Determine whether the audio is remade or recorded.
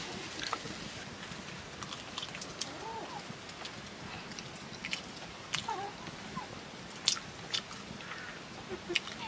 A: recorded